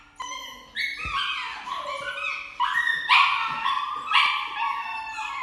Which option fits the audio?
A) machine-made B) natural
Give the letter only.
B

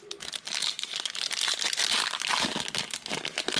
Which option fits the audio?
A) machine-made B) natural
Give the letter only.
B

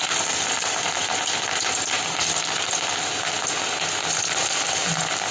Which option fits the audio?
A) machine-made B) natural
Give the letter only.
B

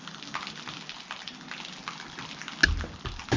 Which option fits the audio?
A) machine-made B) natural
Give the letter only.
B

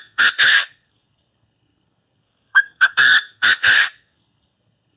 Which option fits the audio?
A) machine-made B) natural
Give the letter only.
A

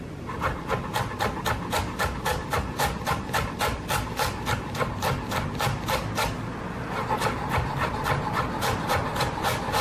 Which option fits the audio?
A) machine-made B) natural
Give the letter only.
B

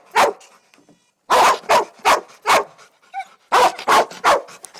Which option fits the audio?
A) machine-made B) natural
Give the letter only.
B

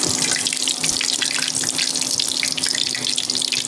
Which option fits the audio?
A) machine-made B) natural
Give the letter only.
B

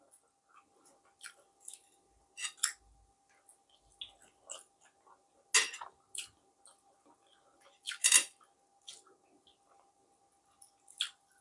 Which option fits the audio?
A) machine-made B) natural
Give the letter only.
B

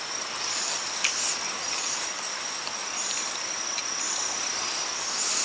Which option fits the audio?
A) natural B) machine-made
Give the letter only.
A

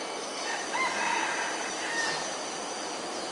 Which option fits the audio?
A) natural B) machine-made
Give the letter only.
A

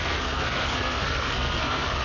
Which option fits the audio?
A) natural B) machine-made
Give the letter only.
B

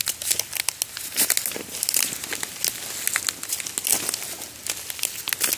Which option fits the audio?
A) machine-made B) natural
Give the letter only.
B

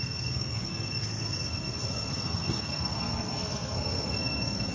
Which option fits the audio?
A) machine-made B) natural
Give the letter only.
A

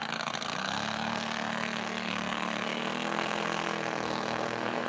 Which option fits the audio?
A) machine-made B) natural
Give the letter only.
A